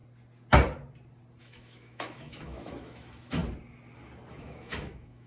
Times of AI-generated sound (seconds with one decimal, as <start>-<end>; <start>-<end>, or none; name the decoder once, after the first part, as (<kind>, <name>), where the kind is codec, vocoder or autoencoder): 1.4-3.4 (autoencoder, DAC-VAE); 4.3-5.3

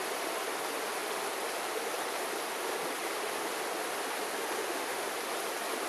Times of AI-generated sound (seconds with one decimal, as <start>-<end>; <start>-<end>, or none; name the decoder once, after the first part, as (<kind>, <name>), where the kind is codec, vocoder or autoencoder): 4.6-5.1 (autoencoder, DAC-VAE)

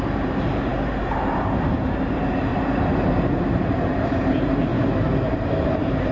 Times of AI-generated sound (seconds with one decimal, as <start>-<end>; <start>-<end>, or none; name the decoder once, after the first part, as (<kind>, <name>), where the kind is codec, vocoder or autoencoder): 0.0-4.7 (vocoder, BigVGAN v2); 5.3-6.1